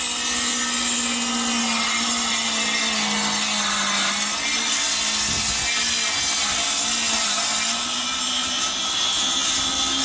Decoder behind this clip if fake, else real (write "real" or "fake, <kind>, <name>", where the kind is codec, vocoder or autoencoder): real